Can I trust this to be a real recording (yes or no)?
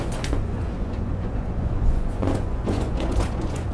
no